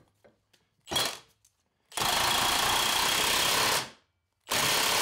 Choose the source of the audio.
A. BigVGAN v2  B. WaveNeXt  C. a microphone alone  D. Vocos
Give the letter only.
C